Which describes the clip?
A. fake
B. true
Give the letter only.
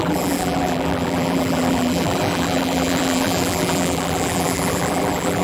A